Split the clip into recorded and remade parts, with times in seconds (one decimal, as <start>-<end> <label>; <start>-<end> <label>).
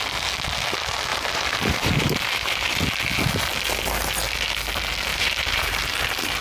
0.0-1.1 recorded; 1.1-2.8 remade; 2.8-5.1 recorded; 5.1-5.7 remade; 5.7-6.4 recorded